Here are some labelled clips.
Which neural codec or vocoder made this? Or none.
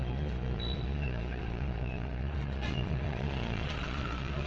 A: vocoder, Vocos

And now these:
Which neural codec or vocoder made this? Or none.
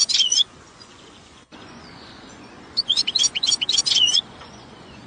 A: vocoder, Vocos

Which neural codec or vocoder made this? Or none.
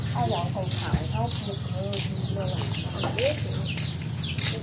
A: none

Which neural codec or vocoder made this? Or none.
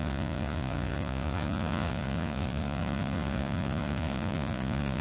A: vocoder, Vocos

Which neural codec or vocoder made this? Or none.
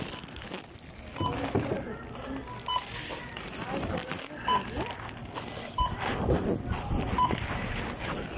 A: none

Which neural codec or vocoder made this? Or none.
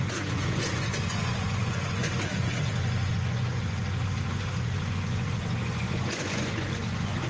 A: vocoder, Vocos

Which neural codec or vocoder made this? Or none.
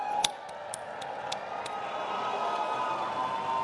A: none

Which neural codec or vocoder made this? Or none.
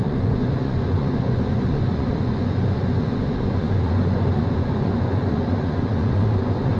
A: vocoder, Vocos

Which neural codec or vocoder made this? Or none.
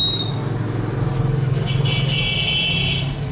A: none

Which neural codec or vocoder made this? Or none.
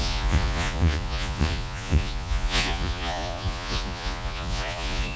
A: vocoder, Vocos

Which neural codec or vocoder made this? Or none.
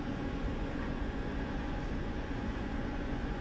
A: vocoder, Vocos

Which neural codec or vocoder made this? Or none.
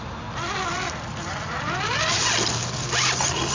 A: none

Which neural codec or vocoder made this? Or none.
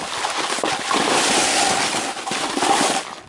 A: none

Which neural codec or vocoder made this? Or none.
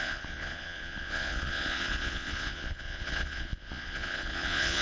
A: vocoder, Vocos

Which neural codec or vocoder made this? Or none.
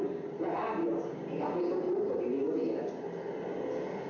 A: none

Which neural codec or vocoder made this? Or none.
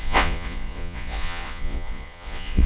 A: vocoder, Vocos